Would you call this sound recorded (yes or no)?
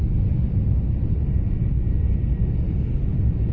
yes